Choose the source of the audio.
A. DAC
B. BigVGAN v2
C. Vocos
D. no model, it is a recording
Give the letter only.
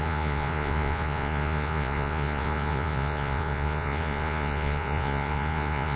C